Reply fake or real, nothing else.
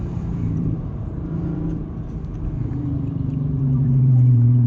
fake